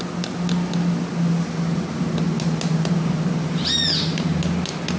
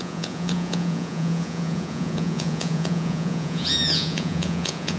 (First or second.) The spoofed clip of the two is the second